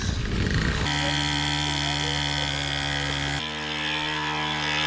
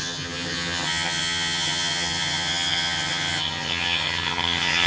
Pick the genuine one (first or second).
first